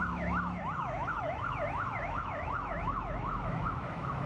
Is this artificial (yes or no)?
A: yes